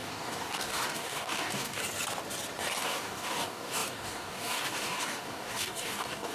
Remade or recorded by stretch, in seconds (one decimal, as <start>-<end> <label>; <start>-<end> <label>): 0.0-1.8 remade; 1.8-2.8 recorded; 2.8-6.3 remade